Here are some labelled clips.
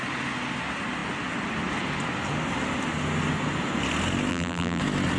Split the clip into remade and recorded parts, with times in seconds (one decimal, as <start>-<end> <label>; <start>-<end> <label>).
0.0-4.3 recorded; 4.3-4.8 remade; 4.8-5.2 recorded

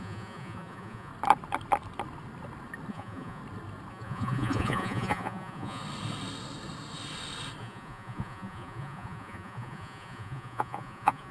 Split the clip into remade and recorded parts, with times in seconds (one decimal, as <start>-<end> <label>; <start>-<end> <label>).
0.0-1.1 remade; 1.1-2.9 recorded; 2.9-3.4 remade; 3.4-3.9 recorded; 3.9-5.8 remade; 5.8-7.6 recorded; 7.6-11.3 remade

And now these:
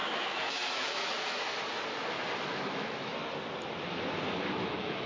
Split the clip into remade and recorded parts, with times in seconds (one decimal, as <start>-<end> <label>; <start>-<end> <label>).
0.0-1.5 remade; 1.5-2.5 recorded; 2.5-3.1 remade; 3.1-4.5 recorded; 4.5-5.1 remade

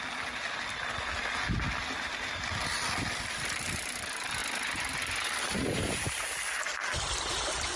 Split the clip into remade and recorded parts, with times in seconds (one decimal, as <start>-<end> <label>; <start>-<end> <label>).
0.0-7.8 recorded

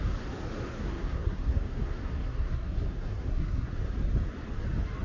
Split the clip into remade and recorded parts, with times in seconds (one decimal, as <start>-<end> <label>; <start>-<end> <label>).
0.0-0.7 recorded; 0.7-3.7 remade; 3.7-5.0 recorded

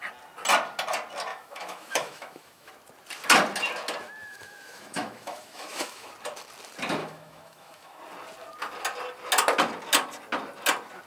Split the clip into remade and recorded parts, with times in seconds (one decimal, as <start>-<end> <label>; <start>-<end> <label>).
0.0-1.3 recorded; 1.3-2.7 remade; 2.7-4.2 recorded; 4.2-6.1 remade; 6.1-7.0 recorded; 7.0-8.0 remade; 8.0-11.1 recorded